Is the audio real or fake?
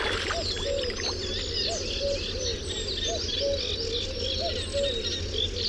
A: real